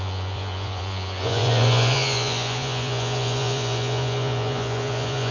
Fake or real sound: fake